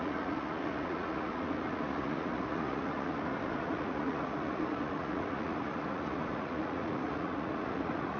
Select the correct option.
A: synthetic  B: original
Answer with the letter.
A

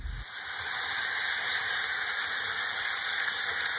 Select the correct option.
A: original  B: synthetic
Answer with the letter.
A